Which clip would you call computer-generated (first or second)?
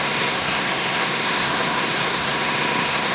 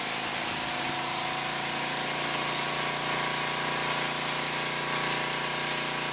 first